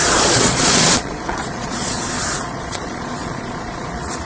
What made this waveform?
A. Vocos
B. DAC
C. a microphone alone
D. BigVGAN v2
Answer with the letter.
A